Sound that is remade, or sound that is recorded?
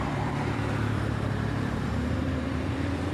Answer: remade